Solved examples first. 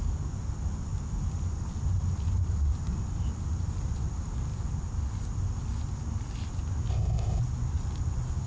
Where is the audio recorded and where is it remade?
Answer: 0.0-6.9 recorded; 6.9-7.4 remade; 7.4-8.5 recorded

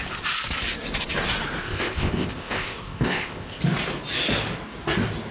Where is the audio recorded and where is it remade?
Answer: 0.0-1.6 recorded; 1.6-3.6 remade; 3.6-5.3 recorded

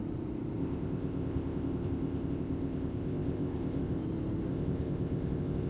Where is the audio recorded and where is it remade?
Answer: 0.0-0.6 recorded; 0.6-4.0 remade; 4.0-4.5 recorded; 4.5-5.7 remade

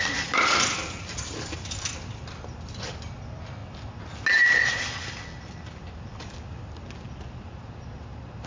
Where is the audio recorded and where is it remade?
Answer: 0.0-8.5 recorded

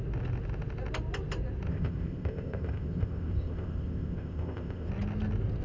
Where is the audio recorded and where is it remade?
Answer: 0.0-1.7 recorded; 1.7-4.9 remade; 4.9-5.6 recorded

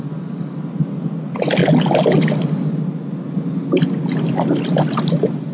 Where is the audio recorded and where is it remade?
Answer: 0.0-5.5 recorded

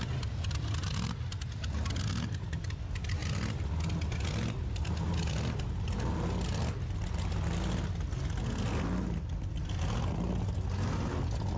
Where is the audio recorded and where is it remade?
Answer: 0.0-11.6 recorded